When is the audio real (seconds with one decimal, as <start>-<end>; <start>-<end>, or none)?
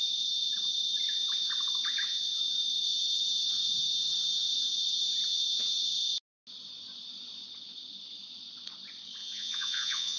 0.0-9.2